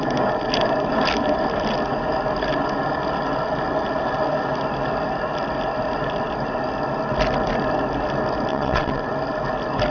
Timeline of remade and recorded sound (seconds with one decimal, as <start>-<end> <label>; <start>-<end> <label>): 0.0-8.5 recorded; 8.5-9.0 remade; 9.0-9.9 recorded